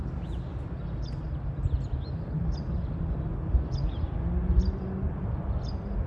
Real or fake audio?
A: real